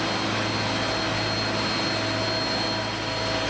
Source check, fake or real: real